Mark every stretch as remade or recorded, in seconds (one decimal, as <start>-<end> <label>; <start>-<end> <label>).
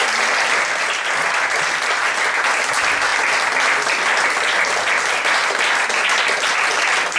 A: 0.0-7.2 recorded